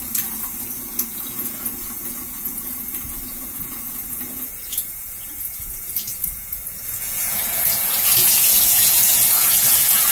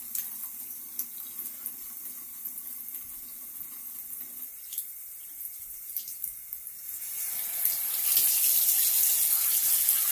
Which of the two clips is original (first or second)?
second